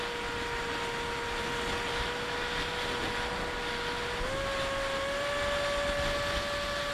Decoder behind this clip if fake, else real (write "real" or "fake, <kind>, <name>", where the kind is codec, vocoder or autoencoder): real